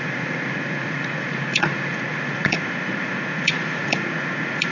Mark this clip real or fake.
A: fake